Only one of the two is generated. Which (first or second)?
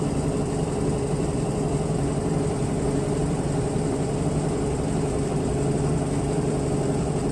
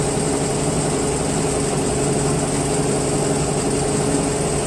first